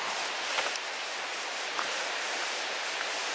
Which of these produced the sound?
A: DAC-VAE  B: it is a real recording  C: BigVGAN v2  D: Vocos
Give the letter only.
C